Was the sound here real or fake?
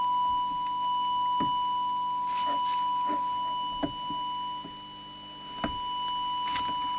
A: real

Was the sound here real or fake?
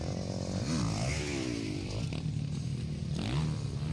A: real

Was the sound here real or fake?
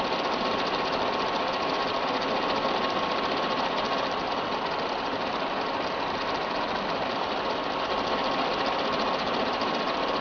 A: real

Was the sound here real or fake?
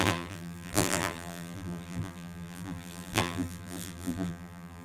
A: fake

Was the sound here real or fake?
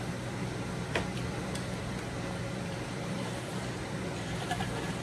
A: fake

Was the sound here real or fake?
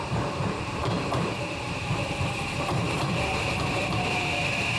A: fake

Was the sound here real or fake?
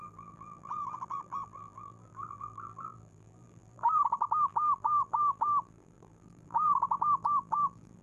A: fake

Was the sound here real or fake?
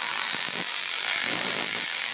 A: fake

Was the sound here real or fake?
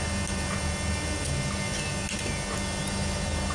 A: real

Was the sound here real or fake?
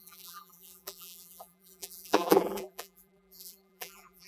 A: fake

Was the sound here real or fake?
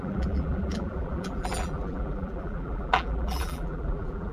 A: fake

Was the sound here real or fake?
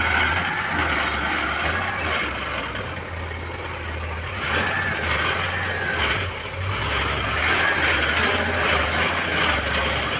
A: real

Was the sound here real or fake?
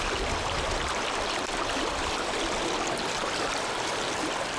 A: fake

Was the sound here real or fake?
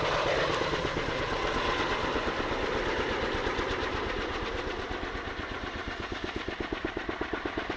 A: real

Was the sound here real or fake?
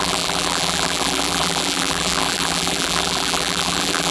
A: fake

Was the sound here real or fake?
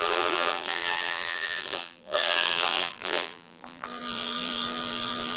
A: fake